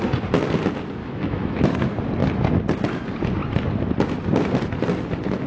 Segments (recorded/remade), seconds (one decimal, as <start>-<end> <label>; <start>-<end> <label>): 0.0-1.0 recorded; 1.0-1.7 remade; 1.7-5.5 recorded